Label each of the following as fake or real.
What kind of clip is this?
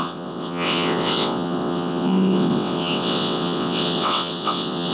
fake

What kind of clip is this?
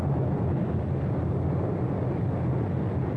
real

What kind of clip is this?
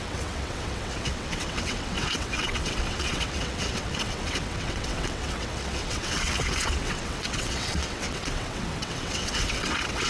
fake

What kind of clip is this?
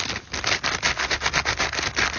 real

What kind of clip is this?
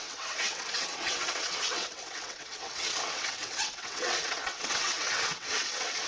fake